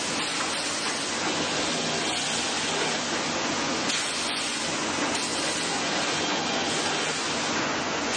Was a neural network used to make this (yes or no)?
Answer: yes